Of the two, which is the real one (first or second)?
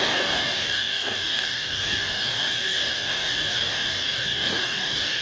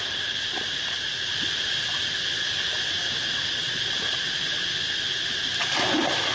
second